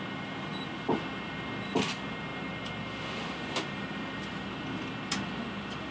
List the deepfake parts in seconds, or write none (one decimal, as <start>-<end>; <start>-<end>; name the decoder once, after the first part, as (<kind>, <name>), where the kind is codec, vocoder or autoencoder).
none

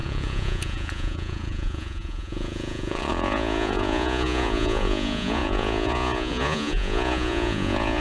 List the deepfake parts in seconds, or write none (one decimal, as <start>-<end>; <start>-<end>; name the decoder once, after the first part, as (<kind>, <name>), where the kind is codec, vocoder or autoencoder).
0.0-8.0 (vocoder, Vocos)

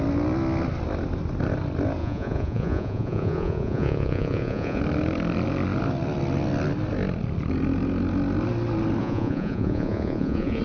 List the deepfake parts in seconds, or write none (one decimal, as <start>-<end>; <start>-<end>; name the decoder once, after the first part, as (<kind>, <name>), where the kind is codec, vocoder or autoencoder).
2.0-4.8 (vocoder, Vocos); 9.0-10.6

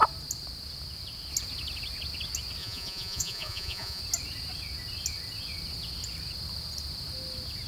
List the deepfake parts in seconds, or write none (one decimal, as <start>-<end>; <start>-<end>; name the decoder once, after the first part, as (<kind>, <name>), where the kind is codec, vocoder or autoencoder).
2.6-4.0 (vocoder, Vocos)

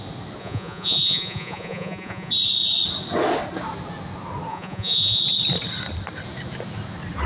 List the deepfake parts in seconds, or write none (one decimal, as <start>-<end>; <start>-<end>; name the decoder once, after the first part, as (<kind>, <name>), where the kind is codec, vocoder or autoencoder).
0.4-2.3 (vocoder, Vocos); 4.5-5.2